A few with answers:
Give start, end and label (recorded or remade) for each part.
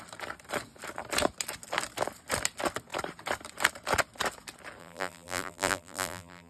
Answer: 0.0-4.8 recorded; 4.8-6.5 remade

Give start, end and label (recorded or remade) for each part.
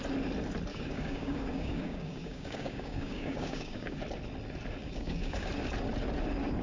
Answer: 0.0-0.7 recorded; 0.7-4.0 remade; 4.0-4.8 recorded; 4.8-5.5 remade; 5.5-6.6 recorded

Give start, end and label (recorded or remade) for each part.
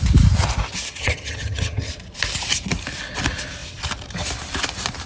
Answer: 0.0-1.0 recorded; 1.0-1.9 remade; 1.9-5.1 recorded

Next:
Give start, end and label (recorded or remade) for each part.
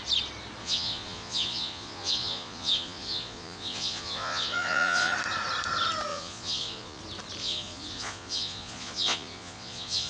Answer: 0.0-0.6 recorded; 0.6-5.1 remade; 5.1-6.1 recorded; 6.1-7.0 remade; 7.0-7.4 recorded; 7.4-10.1 remade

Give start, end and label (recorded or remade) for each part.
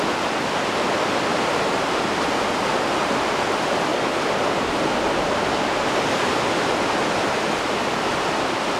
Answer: 0.0-1.3 recorded; 1.3-1.9 remade; 1.9-8.8 recorded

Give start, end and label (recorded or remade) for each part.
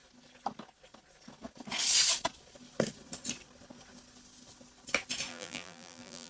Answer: 0.0-5.3 recorded; 5.3-6.3 remade